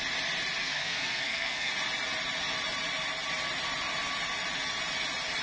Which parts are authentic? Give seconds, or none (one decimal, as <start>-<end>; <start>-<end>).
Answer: 0.0-0.6; 1.7-5.4